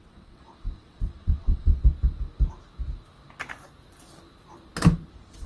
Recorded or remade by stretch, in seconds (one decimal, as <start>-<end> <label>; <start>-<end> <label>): 0.0-1.8 remade; 1.8-5.1 recorded; 5.1-5.5 remade